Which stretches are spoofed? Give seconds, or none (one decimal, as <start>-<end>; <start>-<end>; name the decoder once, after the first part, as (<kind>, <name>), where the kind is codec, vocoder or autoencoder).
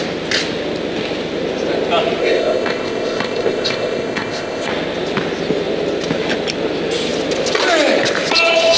2.2-4.7 (codec, ZipCodec)